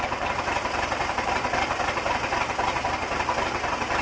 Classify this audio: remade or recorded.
remade